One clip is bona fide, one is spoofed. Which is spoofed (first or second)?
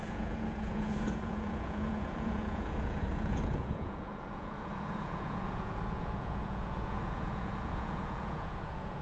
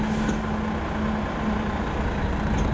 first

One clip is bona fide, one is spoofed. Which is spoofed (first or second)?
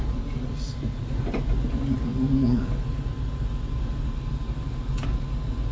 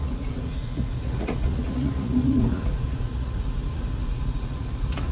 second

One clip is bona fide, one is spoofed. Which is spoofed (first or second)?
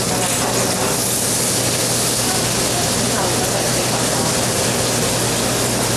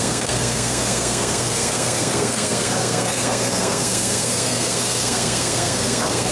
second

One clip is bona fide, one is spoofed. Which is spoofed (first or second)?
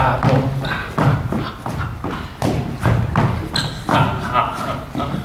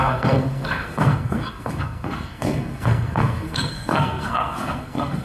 second